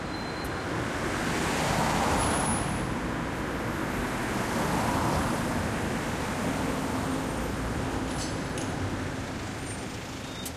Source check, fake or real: real